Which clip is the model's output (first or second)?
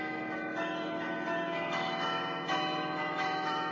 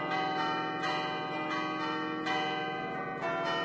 first